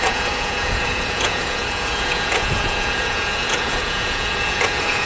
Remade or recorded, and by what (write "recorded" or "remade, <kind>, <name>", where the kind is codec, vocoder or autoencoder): remade, vocoder, Vocos